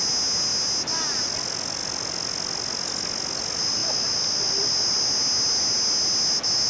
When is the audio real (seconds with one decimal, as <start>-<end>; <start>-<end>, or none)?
0.0-6.7